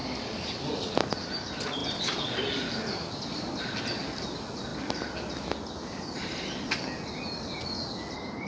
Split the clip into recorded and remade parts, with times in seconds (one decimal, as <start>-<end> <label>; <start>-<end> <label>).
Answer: 0.0-0.6 remade; 0.6-8.5 recorded